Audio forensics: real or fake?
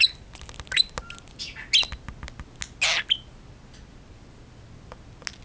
real